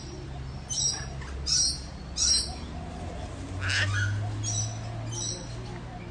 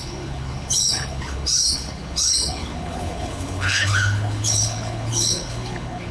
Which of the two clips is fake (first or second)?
second